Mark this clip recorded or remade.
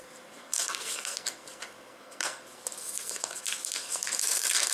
remade